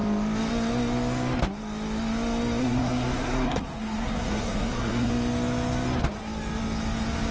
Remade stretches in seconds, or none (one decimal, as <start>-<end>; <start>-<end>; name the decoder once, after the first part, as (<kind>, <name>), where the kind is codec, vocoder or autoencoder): 2.6-5.1 (codec, SNAC)